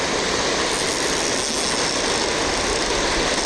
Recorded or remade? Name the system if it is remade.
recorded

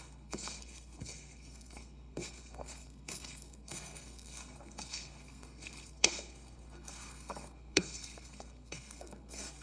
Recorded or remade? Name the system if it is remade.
remade, codec, SNAC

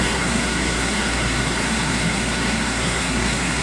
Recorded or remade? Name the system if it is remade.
remade, codec, SNAC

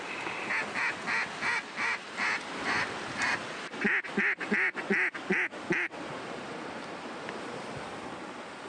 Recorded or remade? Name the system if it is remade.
recorded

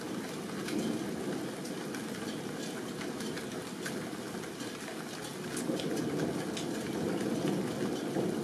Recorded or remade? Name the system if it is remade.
recorded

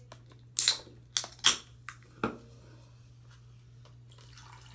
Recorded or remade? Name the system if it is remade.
recorded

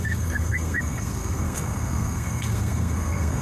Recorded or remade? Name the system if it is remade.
remade, codec, SNAC